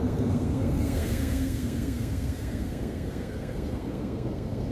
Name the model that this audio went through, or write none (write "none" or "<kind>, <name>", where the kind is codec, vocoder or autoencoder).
codec, SNAC